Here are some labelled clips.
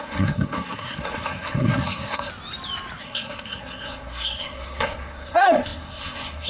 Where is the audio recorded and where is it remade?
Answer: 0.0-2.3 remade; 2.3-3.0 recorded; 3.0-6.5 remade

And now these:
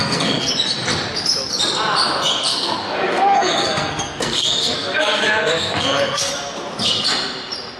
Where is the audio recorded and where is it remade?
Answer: 0.0-0.5 remade; 0.5-2.5 recorded; 2.5-6.3 remade; 6.3-7.8 recorded

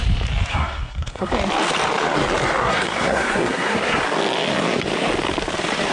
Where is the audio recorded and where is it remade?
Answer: 0.0-0.5 recorded; 0.5-1.3 remade; 1.3-2.6 recorded; 2.6-4.0 remade; 4.0-5.9 recorded

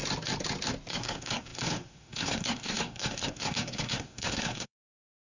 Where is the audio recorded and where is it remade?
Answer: 0.0-0.9 recorded; 0.9-5.3 remade

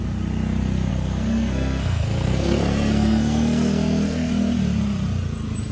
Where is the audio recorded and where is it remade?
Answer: 0.0-0.9 recorded; 0.9-4.3 remade; 4.3-5.7 recorded

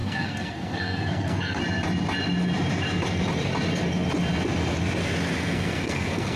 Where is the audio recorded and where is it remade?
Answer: 0.0-1.6 remade; 1.6-5.4 recorded; 5.4-6.4 remade